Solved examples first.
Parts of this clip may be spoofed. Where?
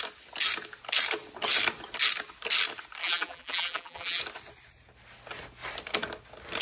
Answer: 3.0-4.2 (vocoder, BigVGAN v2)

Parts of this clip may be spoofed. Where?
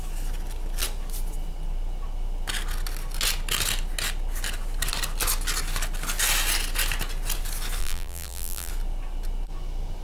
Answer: 7.8-8.7 (vocoder, BigVGAN v2)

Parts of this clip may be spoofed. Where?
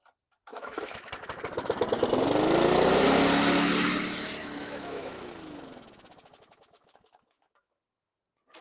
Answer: 0.5-1.1 (autoencoder, DAC-VAE); 4.4-8.2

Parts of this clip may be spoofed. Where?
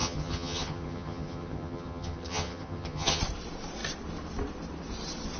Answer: 0.0-3.2 (vocoder, HiFi-GAN)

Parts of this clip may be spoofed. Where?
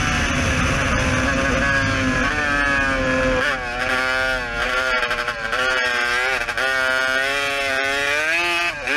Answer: 4.6-6.1 (vocoder, BigVGAN v2)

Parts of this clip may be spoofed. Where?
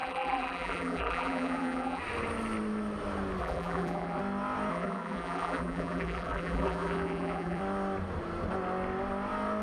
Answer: 0.0-2.0 (vocoder, BigVGAN v2); 3.4-4.2; 4.7-7.6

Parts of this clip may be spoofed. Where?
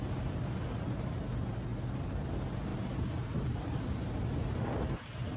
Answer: 1.7-2.3 (vocoder, BigVGAN v2); 2.7-3.8